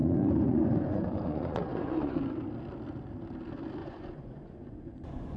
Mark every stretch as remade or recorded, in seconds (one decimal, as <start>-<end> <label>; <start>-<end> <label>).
0.0-2.2 remade; 2.2-3.8 recorded; 3.8-5.4 remade